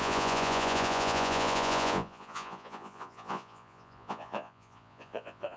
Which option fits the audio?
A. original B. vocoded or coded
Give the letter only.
B